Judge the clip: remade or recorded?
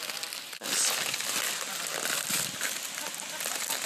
recorded